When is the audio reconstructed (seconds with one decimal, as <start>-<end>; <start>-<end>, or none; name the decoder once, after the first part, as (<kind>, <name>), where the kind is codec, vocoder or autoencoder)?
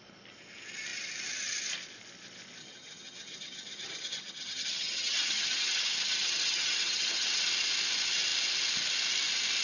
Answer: 2.6-7.5 (vocoder, HiFi-GAN)